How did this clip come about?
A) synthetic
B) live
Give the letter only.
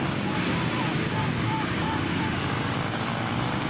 A